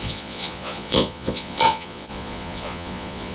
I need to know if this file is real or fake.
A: fake